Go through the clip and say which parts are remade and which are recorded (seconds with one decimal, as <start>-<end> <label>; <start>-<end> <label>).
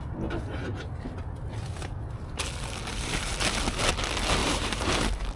0.0-4.4 recorded; 4.4-4.9 remade; 4.9-5.4 recorded